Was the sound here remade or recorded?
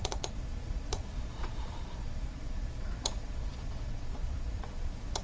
remade